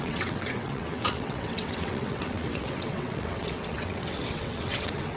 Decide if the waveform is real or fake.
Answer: fake